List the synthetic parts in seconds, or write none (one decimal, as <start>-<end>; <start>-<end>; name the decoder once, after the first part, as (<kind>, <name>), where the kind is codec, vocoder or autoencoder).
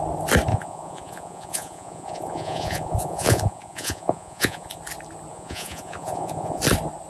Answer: 0.5-4.8 (vocoder, Vocos); 5.3-6.6